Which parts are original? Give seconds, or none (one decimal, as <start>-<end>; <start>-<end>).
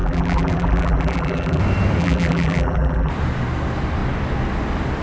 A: 1.6-2.0; 3.1-5.0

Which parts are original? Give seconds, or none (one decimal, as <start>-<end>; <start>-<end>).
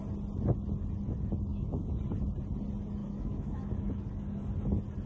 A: 0.0-1.5; 2.0-3.0; 4.1-5.1